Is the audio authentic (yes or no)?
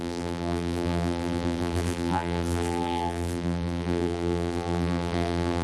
no